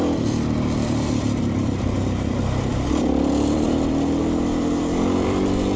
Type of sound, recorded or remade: remade